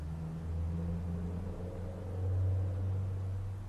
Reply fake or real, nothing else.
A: real